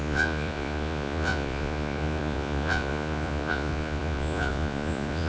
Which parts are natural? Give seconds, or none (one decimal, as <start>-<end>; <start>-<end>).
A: none